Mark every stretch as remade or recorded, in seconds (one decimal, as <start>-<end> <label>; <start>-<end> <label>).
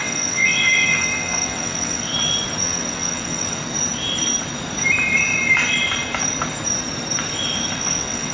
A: 0.0-2.1 remade; 2.1-2.6 recorded; 2.6-3.6 remade; 3.6-7.8 recorded; 7.8-8.3 remade